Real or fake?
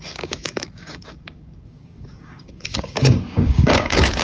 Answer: fake